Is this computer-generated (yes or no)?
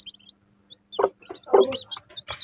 no